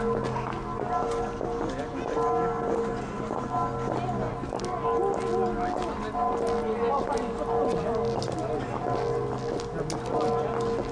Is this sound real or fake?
real